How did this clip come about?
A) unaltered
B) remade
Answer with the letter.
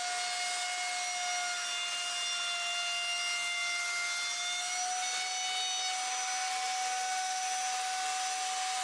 A